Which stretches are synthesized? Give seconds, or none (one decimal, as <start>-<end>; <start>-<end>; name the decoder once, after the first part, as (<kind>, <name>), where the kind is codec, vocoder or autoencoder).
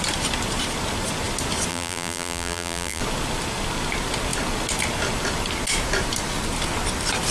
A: 1.7-3.0 (vocoder, BigVGAN v2)